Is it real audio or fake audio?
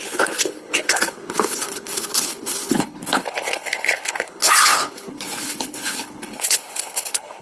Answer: fake